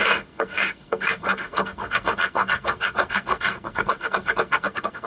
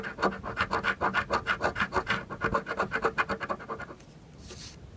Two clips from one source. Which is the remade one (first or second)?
first